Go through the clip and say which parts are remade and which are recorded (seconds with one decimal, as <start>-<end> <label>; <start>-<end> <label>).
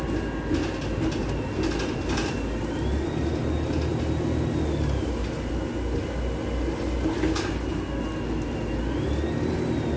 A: 0.0-10.0 recorded